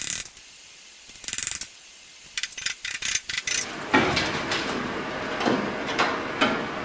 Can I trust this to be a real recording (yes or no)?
yes